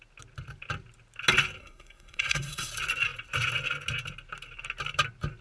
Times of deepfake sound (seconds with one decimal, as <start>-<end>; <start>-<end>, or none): 1.6-2.7